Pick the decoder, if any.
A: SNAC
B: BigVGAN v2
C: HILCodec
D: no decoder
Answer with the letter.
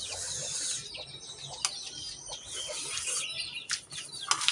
D